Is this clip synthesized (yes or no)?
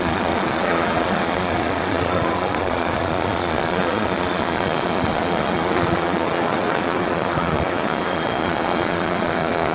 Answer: yes